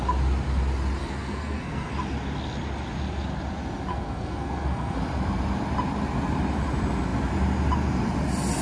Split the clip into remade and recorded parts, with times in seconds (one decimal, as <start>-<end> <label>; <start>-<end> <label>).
0.0-1.0 recorded; 1.0-1.9 remade; 1.9-3.9 recorded; 3.9-5.0 remade; 5.0-8.6 recorded